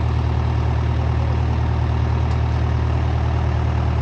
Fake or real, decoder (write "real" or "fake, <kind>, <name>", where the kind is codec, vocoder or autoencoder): real